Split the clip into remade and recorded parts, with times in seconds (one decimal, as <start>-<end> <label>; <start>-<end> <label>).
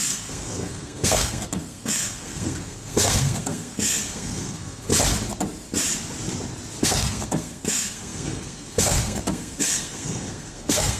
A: 0.0-4.9 remade; 4.9-6.8 recorded; 6.8-11.0 remade